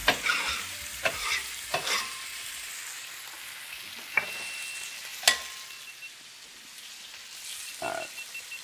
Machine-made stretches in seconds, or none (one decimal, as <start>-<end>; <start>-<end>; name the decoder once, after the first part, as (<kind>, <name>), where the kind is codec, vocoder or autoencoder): 0.0-2.7 (vocoder, BigVGAN v2)